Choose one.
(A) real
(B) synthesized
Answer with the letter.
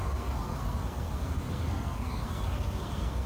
B